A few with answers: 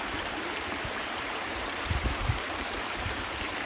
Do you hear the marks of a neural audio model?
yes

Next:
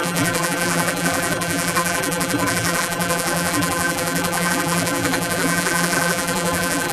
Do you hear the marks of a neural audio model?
yes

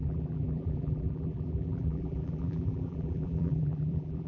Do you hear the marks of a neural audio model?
yes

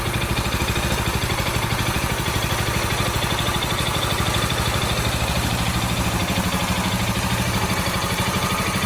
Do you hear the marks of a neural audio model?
yes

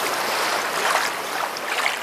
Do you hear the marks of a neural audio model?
no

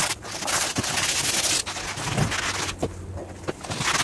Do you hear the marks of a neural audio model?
no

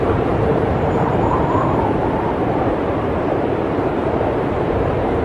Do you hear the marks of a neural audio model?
yes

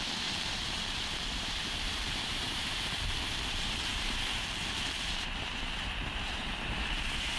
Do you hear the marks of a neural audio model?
yes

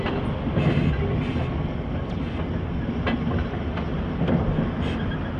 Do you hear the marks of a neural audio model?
no